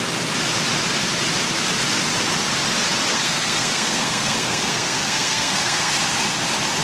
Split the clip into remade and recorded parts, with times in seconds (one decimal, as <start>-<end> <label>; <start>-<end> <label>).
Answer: 0.0-3.1 recorded; 3.1-5.9 remade; 5.9-6.8 recorded